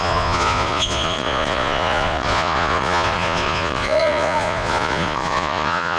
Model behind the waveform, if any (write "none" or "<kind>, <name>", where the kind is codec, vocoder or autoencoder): vocoder, Vocos